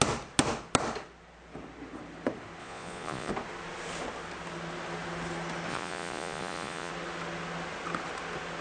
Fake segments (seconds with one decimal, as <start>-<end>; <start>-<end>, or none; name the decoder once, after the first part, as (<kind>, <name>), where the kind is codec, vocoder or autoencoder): 2.6-3.3 (vocoder, Vocos); 5.7-6.9